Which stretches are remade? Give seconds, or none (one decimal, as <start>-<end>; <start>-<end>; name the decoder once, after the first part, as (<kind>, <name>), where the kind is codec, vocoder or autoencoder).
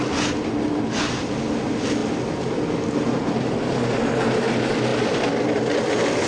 none